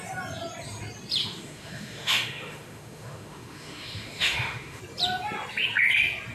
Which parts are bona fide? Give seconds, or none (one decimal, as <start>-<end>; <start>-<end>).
0.0-1.2; 4.8-6.3